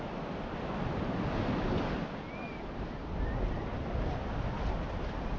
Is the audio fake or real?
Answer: real